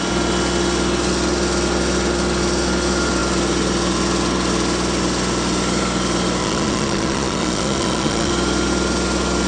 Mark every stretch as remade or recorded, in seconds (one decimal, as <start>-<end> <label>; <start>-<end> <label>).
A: 0.0-6.4 recorded; 6.4-8.3 remade; 8.3-9.5 recorded

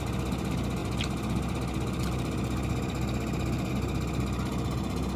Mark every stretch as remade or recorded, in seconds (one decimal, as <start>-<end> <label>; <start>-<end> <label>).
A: 0.0-5.2 recorded

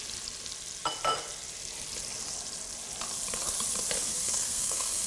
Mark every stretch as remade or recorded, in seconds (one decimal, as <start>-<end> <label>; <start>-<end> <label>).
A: 0.0-4.1 recorded; 4.1-5.1 remade

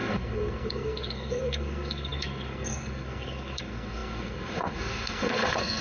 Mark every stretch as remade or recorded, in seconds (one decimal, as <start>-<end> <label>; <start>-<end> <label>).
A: 0.0-5.8 remade